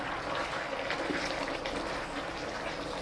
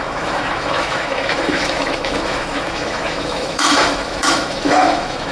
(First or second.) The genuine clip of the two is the first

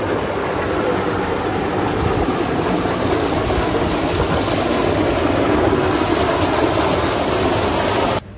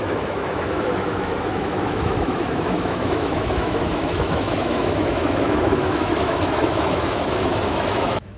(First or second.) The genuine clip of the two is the first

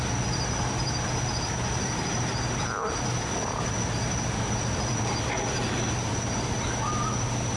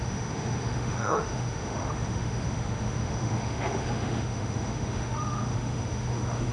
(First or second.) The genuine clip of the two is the first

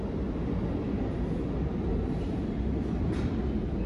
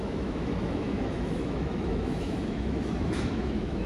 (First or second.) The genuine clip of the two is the first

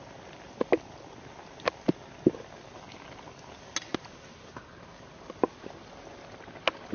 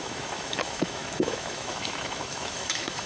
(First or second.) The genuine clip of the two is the first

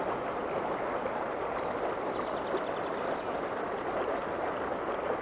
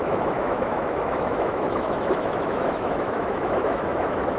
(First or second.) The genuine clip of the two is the first